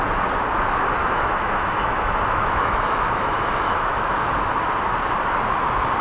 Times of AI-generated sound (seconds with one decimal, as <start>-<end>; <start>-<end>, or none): 1.0-4.3